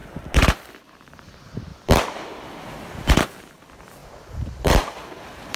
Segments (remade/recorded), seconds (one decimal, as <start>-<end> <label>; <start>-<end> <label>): 0.0-0.8 recorded; 0.8-1.7 remade; 1.7-3.4 recorded; 3.4-5.6 remade